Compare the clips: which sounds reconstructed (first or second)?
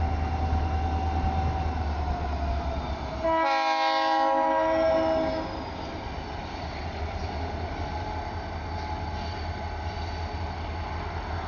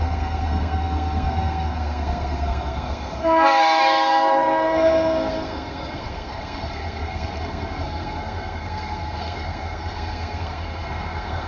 second